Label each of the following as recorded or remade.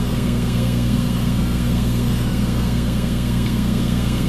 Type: remade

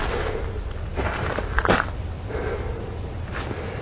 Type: recorded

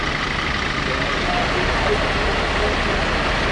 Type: recorded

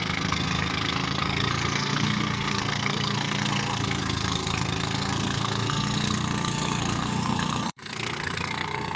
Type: remade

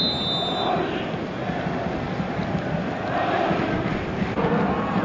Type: recorded